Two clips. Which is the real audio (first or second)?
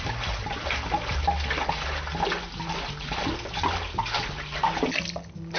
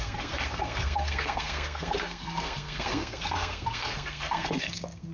first